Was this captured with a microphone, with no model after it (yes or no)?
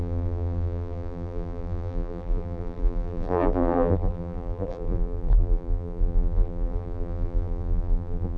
no